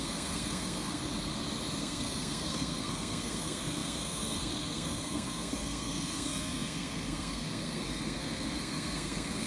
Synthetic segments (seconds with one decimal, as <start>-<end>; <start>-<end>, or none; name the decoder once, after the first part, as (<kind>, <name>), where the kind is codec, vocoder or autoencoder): 0.0-1.0 (codec, SNAC); 1.8-9.5